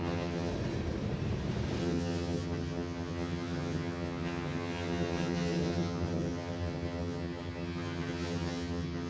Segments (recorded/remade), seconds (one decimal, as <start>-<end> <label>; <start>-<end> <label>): 0.0-0.5 remade; 0.5-1.8 recorded; 1.8-9.1 remade